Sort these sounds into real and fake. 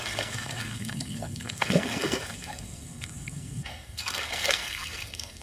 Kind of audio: fake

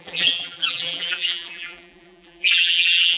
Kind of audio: fake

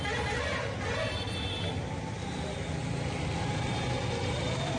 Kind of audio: real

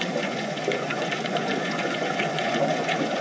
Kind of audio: fake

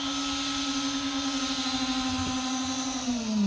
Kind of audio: real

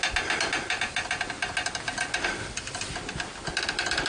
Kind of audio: real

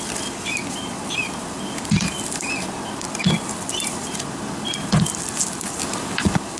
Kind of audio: fake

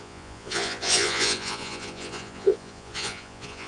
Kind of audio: fake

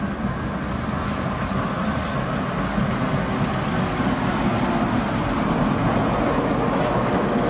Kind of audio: real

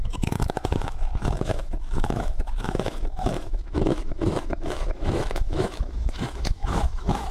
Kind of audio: fake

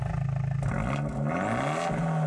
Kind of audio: real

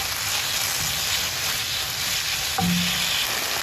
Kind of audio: real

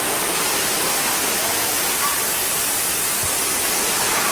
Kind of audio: real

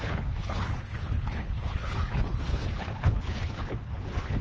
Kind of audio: fake